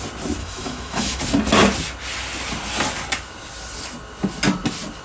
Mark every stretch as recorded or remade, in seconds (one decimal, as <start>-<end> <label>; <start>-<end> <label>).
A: 0.0-0.4 recorded; 0.4-1.2 remade; 1.2-5.0 recorded